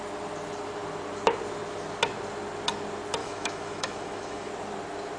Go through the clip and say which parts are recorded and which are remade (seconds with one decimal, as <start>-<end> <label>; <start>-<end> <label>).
0.0-3.2 recorded; 3.2-4.5 remade; 4.5-5.2 recorded